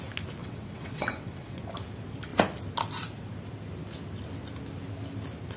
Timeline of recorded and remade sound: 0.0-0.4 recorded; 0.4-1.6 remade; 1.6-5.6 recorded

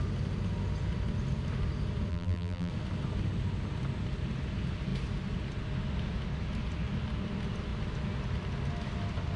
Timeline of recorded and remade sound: 0.0-2.1 recorded; 2.1-2.7 remade; 2.7-9.4 recorded

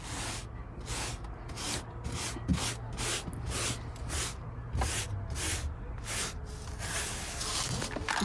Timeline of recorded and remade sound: 0.0-8.2 recorded

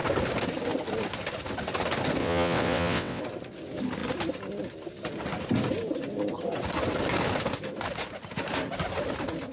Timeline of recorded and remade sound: 0.0-2.2 recorded; 2.2-3.2 remade; 3.2-9.5 recorded

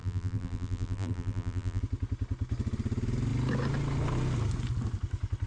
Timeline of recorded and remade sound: 0.0-1.8 remade; 1.8-5.5 recorded

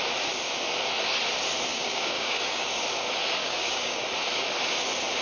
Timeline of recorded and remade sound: 0.0-1.7 recorded; 1.7-2.7 remade; 2.7-3.4 recorded; 3.4-4.0 remade; 4.0-5.2 recorded